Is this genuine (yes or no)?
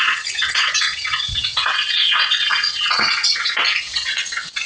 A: no